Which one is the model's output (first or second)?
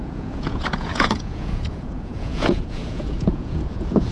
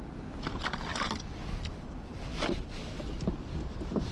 first